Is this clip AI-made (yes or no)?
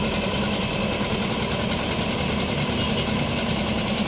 no